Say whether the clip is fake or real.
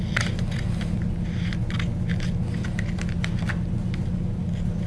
real